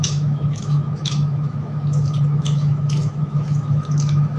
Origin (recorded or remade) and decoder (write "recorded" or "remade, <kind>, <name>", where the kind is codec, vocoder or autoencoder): remade, autoencoder, DAC-VAE